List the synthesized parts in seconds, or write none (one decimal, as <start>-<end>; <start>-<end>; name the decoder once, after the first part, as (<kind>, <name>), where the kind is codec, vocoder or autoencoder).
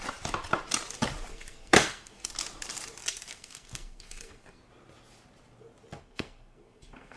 1.3-2.3 (codec, SNAC); 3.0-4.7; 6.0-7.2